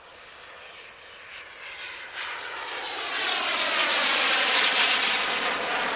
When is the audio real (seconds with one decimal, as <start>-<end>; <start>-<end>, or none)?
0.0-1.8; 5.4-6.0